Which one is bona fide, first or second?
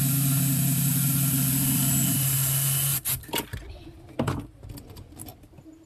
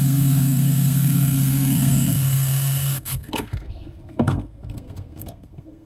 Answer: first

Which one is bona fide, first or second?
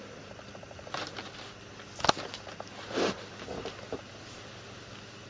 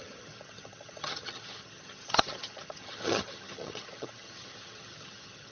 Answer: first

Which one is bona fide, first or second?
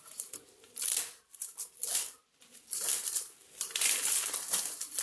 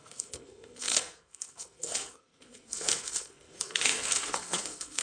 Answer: first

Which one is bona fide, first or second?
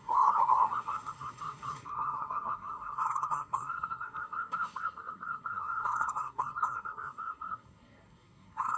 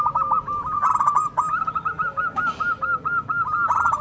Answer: second